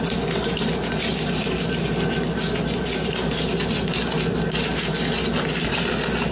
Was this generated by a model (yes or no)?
no